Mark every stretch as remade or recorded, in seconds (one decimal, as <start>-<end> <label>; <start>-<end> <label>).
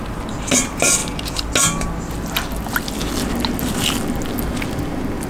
0.0-5.3 recorded